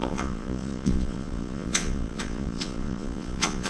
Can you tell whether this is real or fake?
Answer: fake